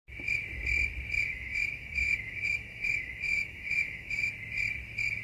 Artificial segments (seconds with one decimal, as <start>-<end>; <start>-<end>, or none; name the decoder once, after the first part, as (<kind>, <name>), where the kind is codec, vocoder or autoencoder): 1.2-4.3 (autoencoder, DAC-VAE)